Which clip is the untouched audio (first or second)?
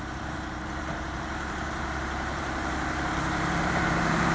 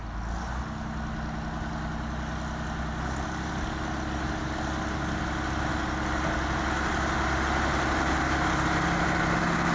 second